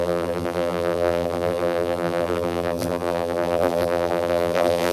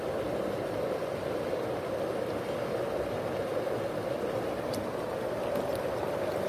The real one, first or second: second